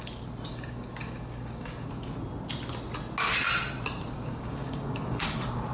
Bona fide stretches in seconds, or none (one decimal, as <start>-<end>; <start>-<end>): 0.0-0.5; 1.9-4.3; 5.2-5.7